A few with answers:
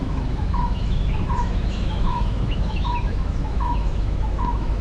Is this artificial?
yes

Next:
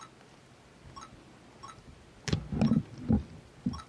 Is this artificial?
no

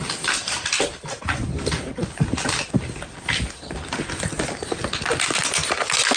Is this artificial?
no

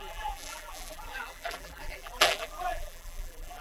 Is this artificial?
yes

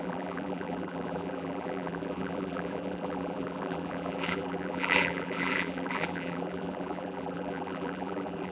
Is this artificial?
yes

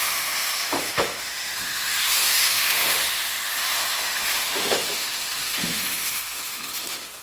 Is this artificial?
yes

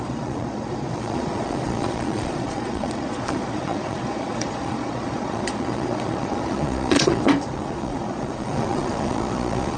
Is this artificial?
yes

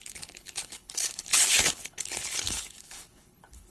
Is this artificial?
yes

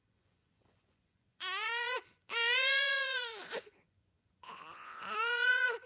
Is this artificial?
yes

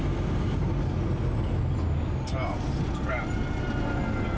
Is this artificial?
no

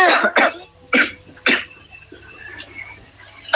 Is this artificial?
no